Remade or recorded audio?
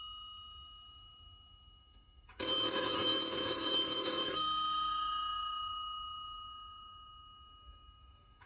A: remade